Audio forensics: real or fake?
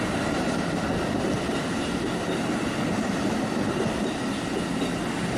real